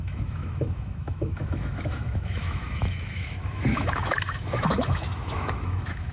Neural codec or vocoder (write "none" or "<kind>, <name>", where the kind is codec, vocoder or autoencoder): autoencoder, DAC-VAE